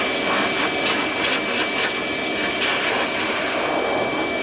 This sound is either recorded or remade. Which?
recorded